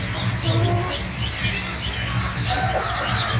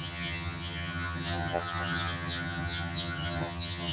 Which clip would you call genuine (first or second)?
first